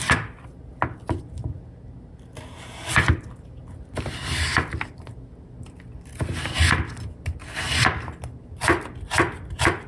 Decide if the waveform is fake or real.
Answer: real